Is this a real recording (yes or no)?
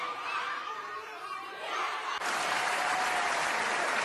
no